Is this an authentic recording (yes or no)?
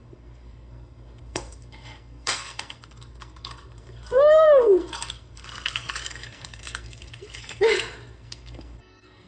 no